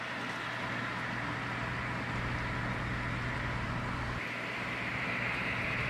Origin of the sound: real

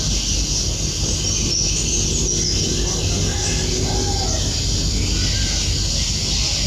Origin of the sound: real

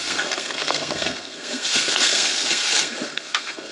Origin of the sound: fake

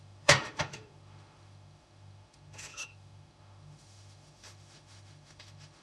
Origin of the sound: fake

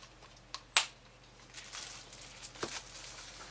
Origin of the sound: real